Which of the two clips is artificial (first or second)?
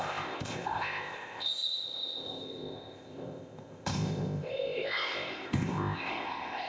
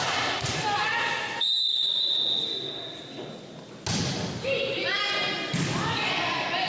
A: first